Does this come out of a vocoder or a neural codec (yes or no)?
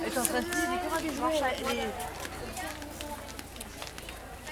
no